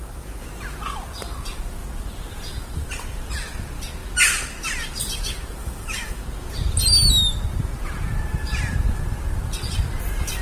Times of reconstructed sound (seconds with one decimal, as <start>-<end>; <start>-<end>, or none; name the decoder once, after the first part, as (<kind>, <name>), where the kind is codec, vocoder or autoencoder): 5.6-6.2 (autoencoder, DAC-VAE)